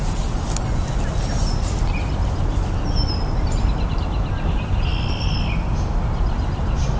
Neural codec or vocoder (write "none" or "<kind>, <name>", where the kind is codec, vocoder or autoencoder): none